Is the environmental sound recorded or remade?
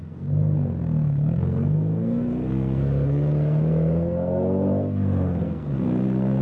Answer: remade